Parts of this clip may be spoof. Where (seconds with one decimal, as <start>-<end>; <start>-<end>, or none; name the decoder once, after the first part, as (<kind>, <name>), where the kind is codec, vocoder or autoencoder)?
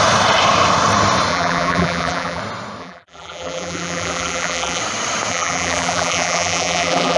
1.3-2.4 (vocoder, BigVGAN v2); 2.8-4.8; 5.3-7.2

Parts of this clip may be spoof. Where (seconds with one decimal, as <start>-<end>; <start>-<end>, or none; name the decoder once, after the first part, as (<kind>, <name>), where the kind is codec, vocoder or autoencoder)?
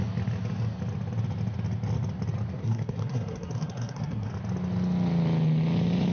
2.6-4.3 (codec, SNAC)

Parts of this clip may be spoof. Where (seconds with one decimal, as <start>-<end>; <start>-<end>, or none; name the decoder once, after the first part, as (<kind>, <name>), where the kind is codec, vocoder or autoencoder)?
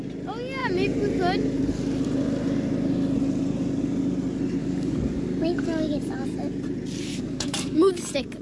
4.6-6.2 (codec, DAC); 7.1-7.9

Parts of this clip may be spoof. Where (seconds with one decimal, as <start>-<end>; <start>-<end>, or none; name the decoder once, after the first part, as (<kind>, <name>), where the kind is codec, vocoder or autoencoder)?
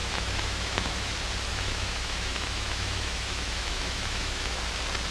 0.0-1.1 (autoencoder, DAC-VAE); 1.5-4.6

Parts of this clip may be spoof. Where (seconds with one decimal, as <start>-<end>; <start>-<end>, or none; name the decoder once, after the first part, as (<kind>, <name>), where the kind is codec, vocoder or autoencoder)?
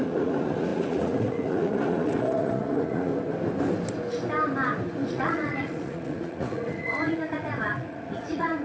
0.0-3.1 (vocoder, Vocos); 5.1-8.6